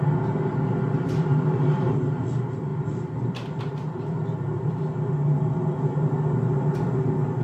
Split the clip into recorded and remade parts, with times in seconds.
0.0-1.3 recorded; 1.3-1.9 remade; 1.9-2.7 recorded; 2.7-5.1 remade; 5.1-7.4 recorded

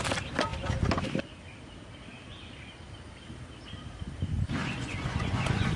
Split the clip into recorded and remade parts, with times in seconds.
0.0-4.6 recorded; 4.6-5.8 remade

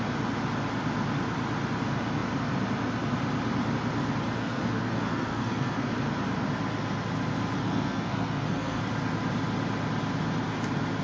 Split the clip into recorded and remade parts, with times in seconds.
0.0-4.4 recorded; 4.4-5.9 remade; 5.9-7.6 recorded; 7.6-8.8 remade; 8.8-11.0 recorded

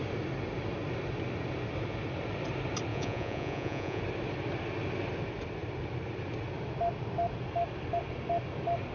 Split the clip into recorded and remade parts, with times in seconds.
0.0-2.9 recorded; 2.9-4.0 remade; 4.0-8.9 recorded

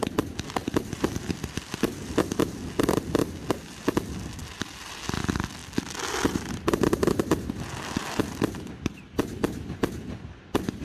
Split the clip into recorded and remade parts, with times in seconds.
0.0-0.6 recorded; 0.6-2.6 remade; 2.6-4.4 recorded; 4.4-4.9 remade; 4.9-5.6 recorded; 5.6-8.7 remade; 8.7-10.8 recorded